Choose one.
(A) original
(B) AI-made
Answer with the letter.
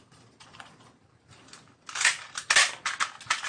A